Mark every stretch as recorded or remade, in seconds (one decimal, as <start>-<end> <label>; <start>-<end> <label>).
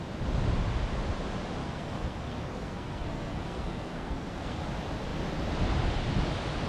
0.0-1.6 recorded; 1.6-4.6 remade; 4.6-6.7 recorded